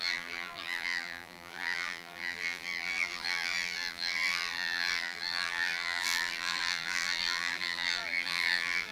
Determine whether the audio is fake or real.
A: fake